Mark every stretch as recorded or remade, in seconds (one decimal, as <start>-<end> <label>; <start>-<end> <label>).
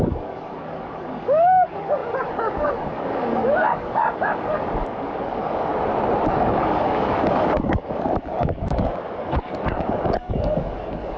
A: 0.0-5.7 remade; 5.7-6.3 recorded; 6.3-11.2 remade